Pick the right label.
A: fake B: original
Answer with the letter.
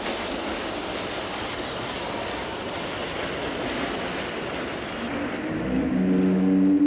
B